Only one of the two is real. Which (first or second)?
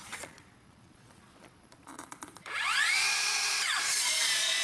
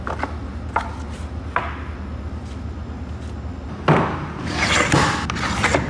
second